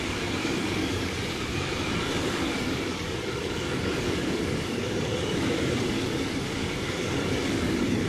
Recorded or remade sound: remade